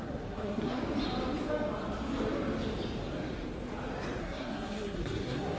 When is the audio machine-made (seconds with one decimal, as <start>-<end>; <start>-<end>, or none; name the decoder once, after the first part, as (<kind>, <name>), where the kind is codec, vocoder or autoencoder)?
0.0-0.8 (codec, SNAC); 4.2-5.6